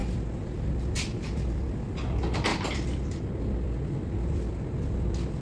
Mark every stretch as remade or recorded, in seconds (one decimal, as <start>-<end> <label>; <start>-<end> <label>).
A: 0.0-2.5 recorded; 2.5-3.2 remade; 3.2-5.4 recorded